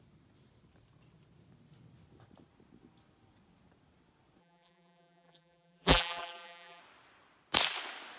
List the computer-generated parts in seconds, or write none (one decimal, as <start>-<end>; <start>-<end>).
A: 4.4-6.8